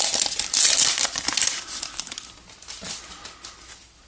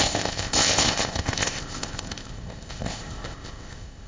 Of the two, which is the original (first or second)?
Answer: first